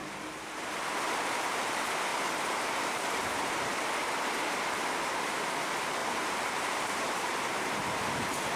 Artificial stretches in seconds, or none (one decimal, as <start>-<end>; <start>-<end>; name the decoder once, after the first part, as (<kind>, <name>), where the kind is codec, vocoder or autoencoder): 0.0-1.7 (vocoder, BigVGAN v2); 2.1-3.2; 6.0-7.8